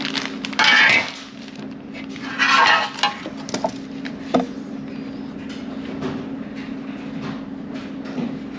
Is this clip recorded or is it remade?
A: recorded